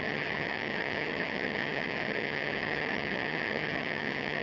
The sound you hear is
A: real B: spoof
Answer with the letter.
B